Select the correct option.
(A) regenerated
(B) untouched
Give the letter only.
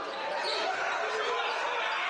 B